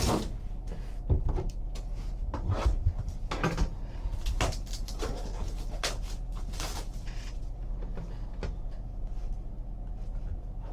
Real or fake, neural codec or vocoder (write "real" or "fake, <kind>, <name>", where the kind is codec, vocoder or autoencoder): real